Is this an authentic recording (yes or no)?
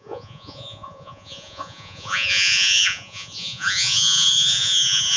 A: no